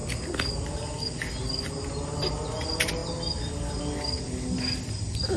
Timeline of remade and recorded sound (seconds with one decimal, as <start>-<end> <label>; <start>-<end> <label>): 0.0-5.4 recorded